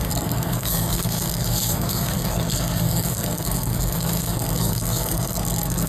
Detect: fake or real fake